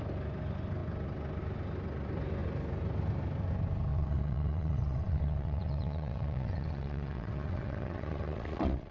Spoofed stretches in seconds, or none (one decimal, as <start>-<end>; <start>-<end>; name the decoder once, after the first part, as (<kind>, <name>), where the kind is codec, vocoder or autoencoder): 3.9-8.9 (vocoder, WaveNeXt)